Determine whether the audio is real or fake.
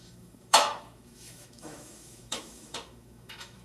fake